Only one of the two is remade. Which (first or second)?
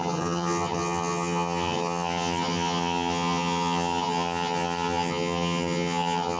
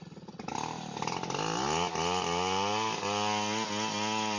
first